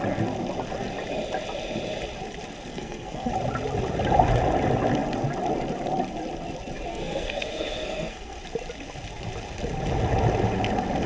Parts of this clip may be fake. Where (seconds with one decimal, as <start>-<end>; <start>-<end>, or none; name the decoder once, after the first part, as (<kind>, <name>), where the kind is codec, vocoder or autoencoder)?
2.7-3.3 (codec, SNAC); 6.9-8.4